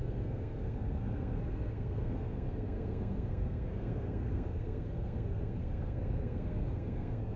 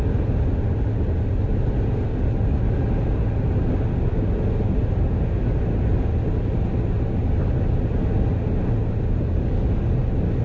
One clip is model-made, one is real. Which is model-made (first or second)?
first